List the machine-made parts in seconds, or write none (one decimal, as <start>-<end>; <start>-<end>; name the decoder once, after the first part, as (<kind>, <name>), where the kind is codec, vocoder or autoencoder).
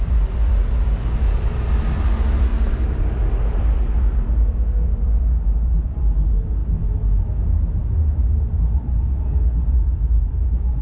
none